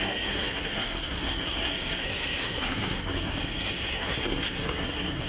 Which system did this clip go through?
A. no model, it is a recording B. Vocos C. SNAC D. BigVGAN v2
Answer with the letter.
C